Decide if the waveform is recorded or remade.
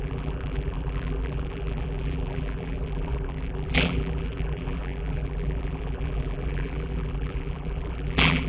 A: remade